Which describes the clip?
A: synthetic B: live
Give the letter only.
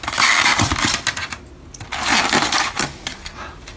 B